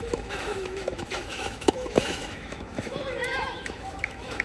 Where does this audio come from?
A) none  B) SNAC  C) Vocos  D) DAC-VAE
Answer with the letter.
D